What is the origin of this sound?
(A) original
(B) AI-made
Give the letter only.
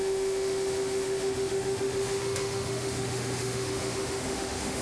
B